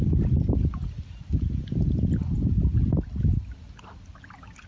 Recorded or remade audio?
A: recorded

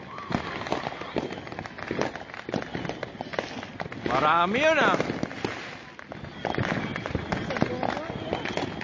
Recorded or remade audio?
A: recorded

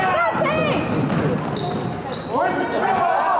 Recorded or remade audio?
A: recorded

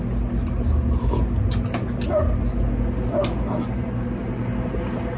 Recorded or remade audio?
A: recorded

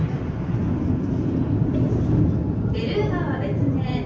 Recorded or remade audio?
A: recorded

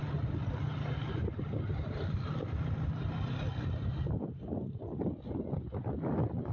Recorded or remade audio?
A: recorded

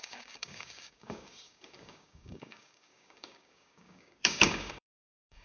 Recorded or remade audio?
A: remade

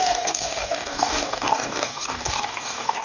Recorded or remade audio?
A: remade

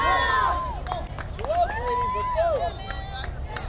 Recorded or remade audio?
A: recorded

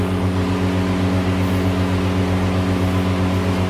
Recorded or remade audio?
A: recorded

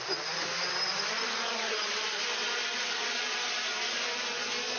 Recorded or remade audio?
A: recorded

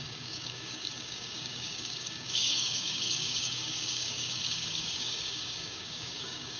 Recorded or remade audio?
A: remade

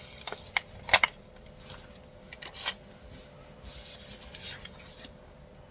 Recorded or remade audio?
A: recorded